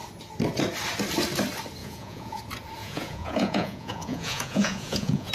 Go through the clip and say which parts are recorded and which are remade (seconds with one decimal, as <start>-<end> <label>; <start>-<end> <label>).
0.0-1.8 recorded; 1.8-2.4 remade; 2.4-2.8 recorded; 2.8-5.3 remade